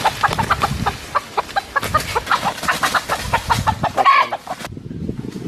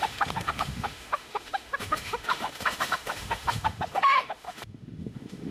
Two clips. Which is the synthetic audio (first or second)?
second